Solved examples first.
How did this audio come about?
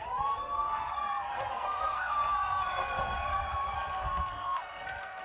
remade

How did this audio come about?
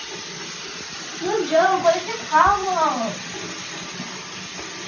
recorded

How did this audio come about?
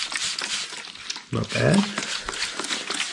recorded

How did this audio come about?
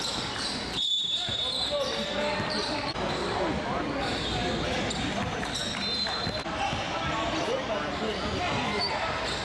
recorded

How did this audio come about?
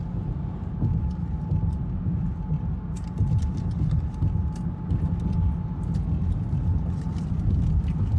recorded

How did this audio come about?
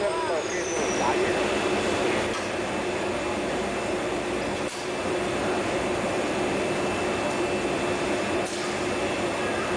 recorded